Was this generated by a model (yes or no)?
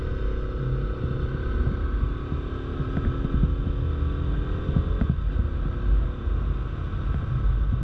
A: no